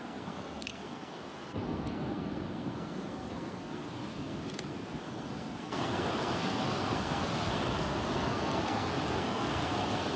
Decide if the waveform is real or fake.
fake